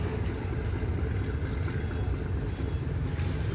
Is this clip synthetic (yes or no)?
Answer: no